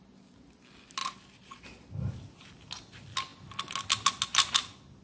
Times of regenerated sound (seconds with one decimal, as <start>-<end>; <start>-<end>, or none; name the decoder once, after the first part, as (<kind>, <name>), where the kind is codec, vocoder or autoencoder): none